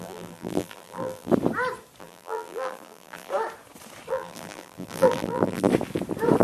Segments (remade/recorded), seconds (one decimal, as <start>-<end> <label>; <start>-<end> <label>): 0.0-1.3 remade; 1.3-2.0 recorded; 2.0-3.3 remade; 3.3-4.1 recorded; 4.1-5.7 remade; 5.7-6.4 recorded